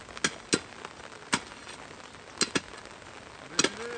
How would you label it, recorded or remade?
recorded